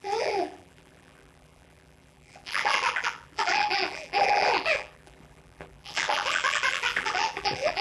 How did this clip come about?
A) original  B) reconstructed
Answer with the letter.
B